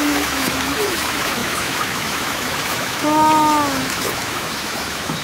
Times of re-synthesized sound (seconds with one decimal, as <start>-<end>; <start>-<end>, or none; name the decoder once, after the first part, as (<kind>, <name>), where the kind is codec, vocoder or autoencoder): 0.0-5.2 (autoencoder, DAC-VAE)